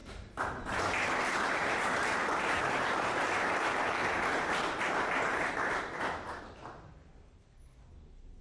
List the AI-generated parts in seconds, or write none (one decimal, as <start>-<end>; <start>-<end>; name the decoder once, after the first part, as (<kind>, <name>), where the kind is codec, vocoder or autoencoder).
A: 0.0-1.1 (vocoder, BigVGAN v2); 1.6-6.4